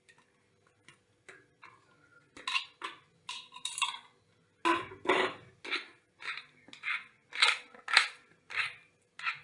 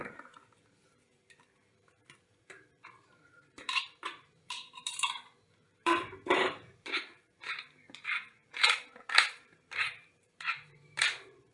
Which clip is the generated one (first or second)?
second